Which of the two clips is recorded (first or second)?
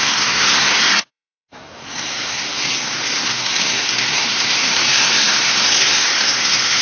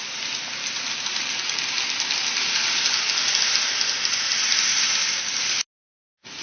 second